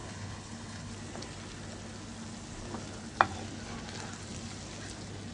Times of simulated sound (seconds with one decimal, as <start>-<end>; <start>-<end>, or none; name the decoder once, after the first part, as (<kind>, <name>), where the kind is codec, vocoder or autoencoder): 0.0-0.9 (codec, HILCodec)